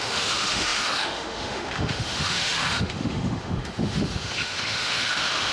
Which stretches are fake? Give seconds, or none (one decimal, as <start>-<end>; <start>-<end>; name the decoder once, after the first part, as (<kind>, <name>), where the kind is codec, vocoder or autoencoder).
0.0-5.5 (autoencoder, DAC-VAE)